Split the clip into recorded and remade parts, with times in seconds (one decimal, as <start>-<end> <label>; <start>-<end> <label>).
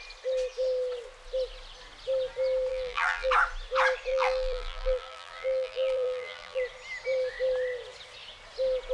0.0-2.7 recorded; 2.7-3.3 remade; 3.3-4.1 recorded; 4.1-6.6 remade; 6.6-8.9 recorded